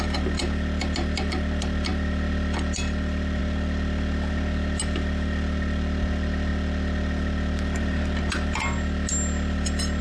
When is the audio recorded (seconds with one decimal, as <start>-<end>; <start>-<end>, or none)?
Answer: 0.0-10.0